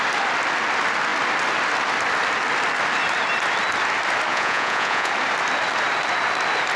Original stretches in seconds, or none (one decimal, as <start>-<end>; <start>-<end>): 0.0-4.3; 5.1-6.8